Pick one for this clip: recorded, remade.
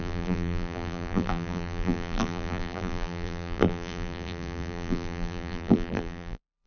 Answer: remade